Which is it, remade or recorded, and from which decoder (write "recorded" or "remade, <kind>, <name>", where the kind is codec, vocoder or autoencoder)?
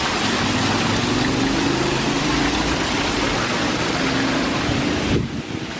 recorded